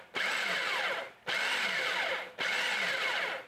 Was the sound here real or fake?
real